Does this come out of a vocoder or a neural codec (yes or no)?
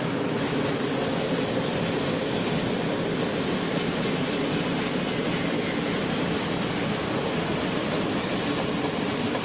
no